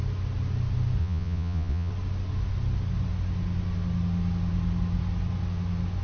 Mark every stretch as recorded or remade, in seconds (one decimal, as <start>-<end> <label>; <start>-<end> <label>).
0.0-1.0 recorded; 1.0-1.9 remade; 1.9-6.0 recorded